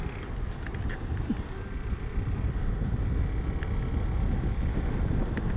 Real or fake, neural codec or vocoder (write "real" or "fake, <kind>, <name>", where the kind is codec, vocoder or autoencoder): real